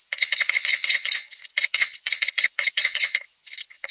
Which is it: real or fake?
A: fake